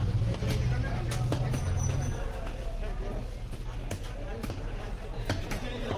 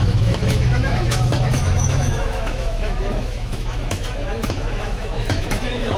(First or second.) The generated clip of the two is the second